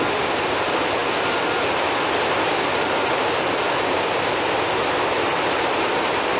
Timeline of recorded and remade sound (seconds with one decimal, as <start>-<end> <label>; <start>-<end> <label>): 0.0-6.4 recorded